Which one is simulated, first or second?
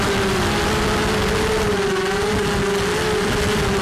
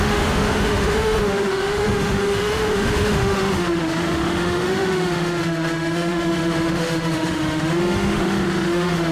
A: second